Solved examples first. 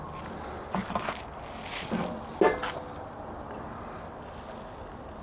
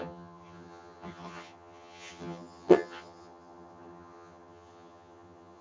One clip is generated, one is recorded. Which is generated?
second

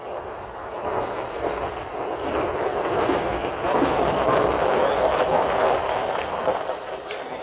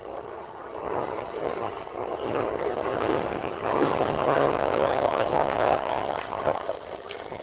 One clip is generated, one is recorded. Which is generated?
second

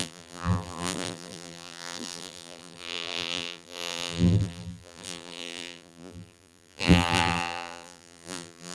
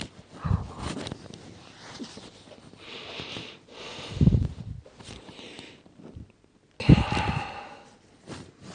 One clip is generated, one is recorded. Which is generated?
first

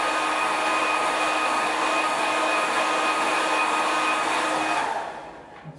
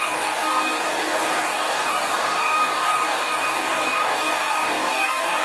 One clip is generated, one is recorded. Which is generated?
second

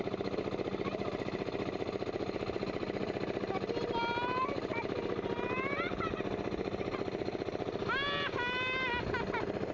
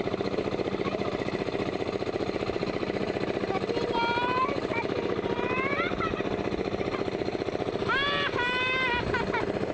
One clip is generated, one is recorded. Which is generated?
second